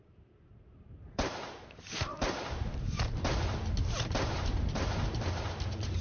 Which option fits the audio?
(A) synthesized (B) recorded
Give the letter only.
A